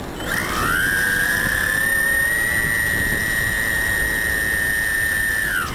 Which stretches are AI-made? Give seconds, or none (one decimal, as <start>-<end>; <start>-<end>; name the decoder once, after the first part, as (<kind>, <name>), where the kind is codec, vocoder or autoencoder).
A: none

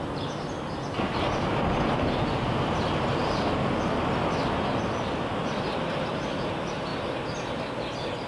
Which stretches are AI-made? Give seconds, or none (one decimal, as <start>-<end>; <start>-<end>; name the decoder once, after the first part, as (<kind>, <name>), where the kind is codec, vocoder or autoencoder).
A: 0.0-3.2 (vocoder, BigVGAN v2); 5.8-6.9

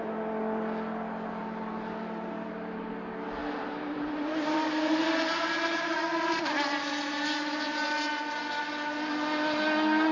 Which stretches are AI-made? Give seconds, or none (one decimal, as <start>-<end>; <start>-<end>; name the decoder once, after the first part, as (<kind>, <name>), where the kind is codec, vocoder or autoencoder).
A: 1.4-2.9 (vocoder, BigVGAN v2); 3.4-8.4

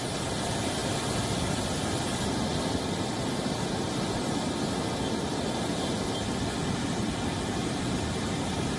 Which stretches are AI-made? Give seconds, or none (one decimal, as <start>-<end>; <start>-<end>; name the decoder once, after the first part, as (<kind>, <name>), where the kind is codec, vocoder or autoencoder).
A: 6.6-8.8 (vocoder, BigVGAN v2)